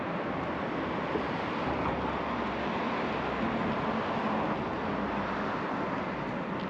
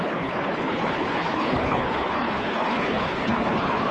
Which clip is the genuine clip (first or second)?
first